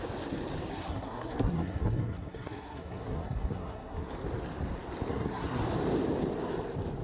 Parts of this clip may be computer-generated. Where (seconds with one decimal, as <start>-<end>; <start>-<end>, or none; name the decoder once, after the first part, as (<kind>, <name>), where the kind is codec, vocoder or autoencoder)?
0.7-4.1 (codec, SNAC); 5.1-5.6